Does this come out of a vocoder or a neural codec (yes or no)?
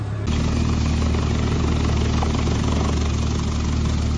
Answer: no